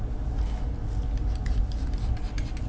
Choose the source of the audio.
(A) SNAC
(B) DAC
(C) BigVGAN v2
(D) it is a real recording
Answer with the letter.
D